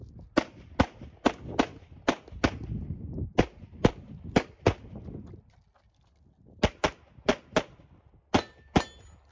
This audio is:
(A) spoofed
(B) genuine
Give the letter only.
B